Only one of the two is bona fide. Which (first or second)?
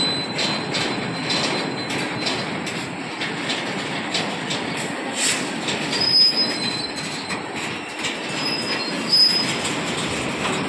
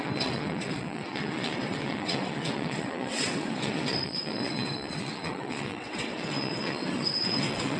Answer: first